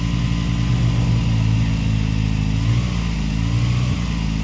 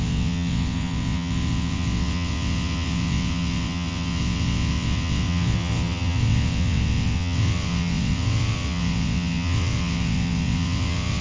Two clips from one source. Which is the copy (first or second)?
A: second